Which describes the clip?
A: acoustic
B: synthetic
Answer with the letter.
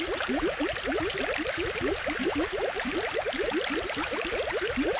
B